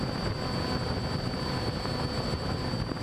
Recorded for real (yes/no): no